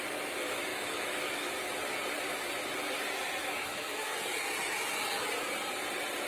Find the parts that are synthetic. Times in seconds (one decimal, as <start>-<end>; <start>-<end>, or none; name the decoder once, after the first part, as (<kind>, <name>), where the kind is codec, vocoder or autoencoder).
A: 0.7-1.5 (autoencoder, DAC-VAE); 3.4-4.1